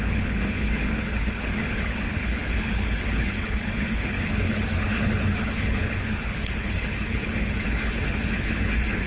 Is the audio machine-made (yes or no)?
yes